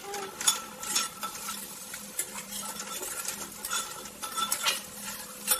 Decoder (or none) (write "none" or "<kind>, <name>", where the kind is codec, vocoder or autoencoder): none